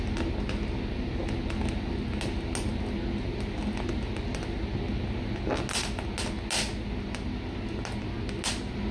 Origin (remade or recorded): recorded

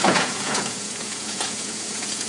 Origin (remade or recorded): remade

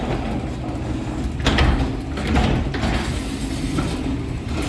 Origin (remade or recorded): recorded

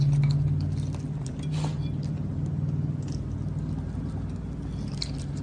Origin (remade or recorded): recorded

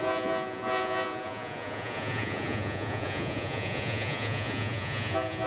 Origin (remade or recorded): remade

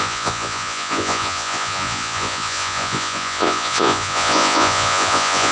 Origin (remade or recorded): remade